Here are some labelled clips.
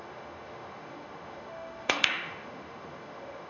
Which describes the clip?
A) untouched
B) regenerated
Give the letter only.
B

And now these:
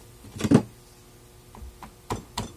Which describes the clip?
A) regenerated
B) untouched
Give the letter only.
B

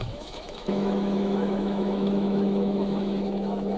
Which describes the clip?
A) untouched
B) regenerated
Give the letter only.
B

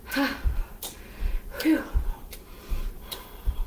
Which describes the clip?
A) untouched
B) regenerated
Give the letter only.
A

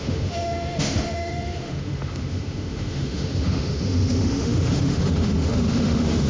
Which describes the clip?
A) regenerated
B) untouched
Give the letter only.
A